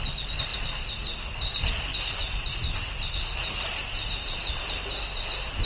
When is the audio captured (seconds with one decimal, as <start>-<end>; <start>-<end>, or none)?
0.0-5.7